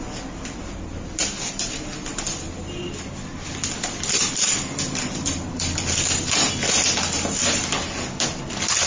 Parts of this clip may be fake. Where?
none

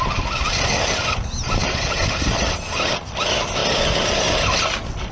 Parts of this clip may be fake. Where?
none

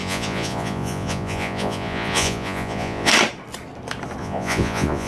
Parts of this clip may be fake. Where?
0.0-3.1 (vocoder, Vocos); 4.2-5.1